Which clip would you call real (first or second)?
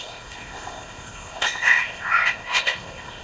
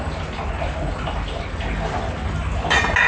second